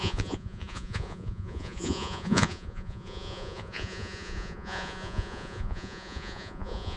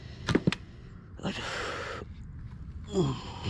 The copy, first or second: first